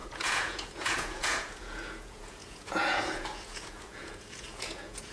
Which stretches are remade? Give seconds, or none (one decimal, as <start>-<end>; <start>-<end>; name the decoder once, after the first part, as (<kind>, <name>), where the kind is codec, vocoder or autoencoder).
0.0-5.1 (vocoder, Vocos)